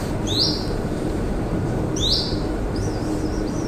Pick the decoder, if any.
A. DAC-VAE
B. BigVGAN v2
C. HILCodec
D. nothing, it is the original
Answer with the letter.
B